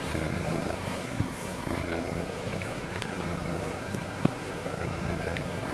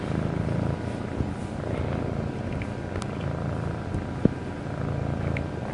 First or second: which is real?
second